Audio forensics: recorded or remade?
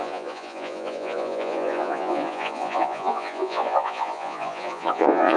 remade